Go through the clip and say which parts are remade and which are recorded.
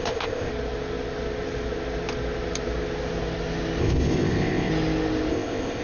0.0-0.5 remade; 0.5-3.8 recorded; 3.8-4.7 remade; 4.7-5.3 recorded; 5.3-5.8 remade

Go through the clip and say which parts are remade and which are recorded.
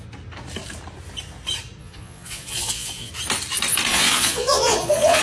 0.0-1.8 recorded; 1.8-3.1 remade; 3.1-3.9 recorded; 3.9-5.2 remade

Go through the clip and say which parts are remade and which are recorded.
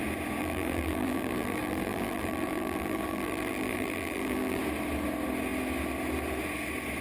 0.0-0.4 recorded; 0.4-4.6 remade; 4.6-7.0 recorded